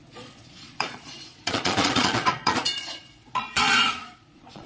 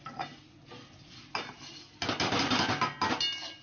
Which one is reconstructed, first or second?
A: first